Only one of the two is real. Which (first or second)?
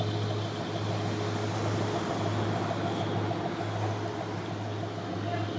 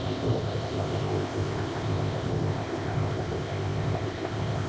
first